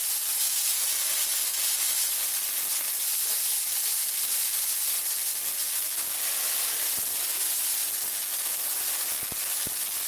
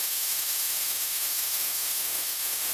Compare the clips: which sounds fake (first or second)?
second